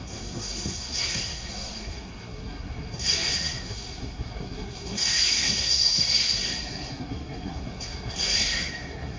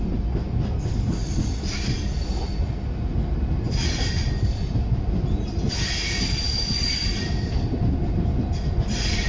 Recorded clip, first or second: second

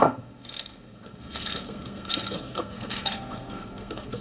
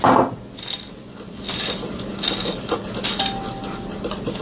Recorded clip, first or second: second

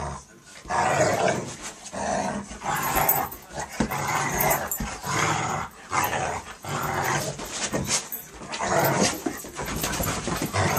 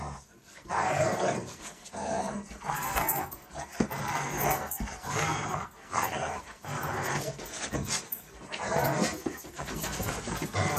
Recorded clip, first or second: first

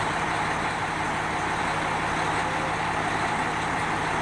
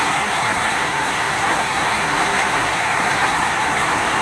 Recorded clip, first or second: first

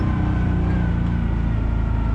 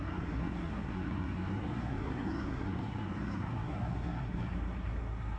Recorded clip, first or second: first